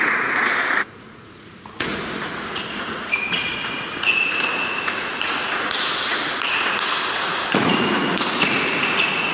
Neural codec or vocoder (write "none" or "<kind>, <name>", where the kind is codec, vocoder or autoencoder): vocoder, Vocos